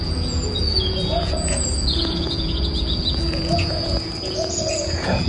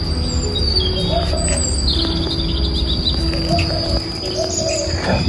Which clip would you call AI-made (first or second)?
first